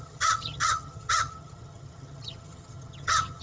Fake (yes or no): yes